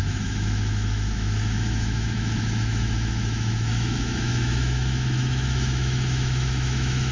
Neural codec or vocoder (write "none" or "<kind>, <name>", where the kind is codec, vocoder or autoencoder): autoencoder, DAC-VAE